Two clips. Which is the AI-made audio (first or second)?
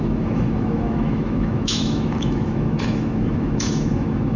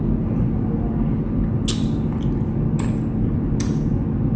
first